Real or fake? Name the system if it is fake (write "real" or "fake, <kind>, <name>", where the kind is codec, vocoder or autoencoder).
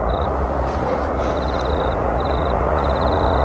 fake, vocoder, Vocos